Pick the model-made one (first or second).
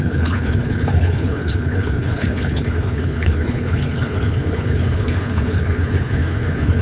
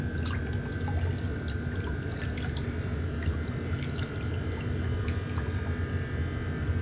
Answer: first